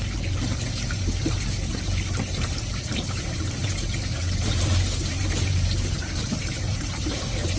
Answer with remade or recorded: remade